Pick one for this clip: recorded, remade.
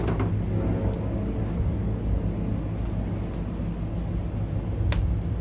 recorded